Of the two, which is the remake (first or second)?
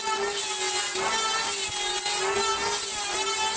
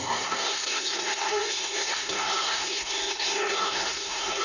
second